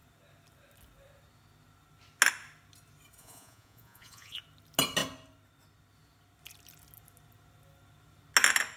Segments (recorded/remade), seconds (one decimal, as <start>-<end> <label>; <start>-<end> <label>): 0.0-3.2 recorded; 3.2-4.4 remade; 4.4-8.8 recorded